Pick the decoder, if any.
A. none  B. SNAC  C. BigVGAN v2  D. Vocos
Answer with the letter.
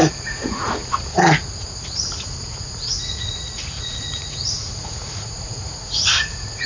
D